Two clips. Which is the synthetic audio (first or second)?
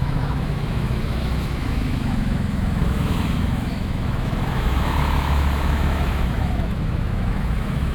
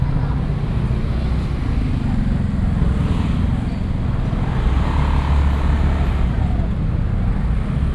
first